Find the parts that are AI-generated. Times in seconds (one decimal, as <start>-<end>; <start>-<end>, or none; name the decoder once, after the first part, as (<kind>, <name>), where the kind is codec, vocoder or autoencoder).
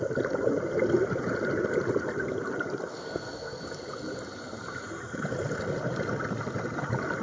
2.9-3.6 (codec, SNAC)